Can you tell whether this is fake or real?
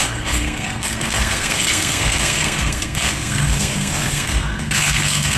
fake